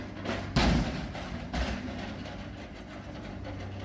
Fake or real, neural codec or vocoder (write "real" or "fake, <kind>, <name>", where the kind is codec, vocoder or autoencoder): real